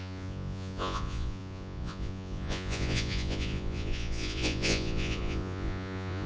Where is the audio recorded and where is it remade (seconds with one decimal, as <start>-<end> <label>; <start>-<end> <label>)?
0.0-6.3 remade